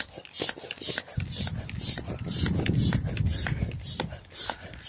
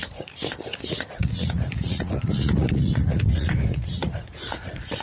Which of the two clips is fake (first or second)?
second